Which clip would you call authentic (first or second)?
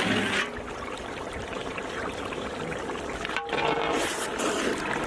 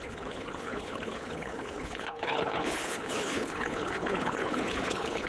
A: first